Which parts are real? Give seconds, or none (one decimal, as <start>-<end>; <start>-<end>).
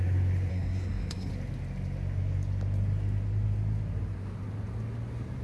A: 0.0-0.5; 1.3-5.4